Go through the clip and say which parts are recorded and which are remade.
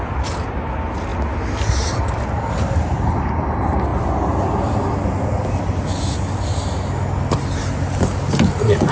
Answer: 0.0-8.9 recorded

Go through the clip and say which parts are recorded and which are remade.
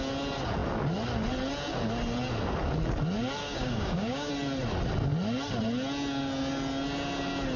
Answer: 0.0-3.4 recorded; 3.4-4.3 remade; 4.3-7.6 recorded